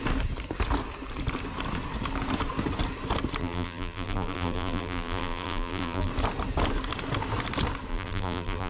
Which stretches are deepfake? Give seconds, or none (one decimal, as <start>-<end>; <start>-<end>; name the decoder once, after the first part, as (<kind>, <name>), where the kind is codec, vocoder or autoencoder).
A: 3.4-6.1 (vocoder, BigVGAN v2); 7.9-8.7